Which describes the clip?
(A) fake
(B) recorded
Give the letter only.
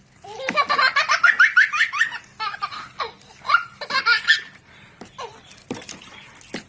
B